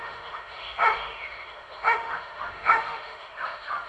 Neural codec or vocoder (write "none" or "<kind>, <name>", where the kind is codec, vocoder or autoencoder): autoencoder, DAC-VAE